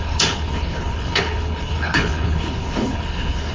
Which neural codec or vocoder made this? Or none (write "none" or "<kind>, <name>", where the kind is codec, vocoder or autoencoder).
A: codec, HILCodec